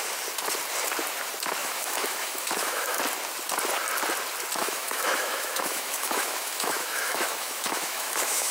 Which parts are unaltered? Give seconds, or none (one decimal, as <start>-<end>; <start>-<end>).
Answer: 0.0-1.6; 3.0-4.6